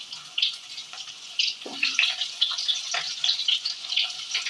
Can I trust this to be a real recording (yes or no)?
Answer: no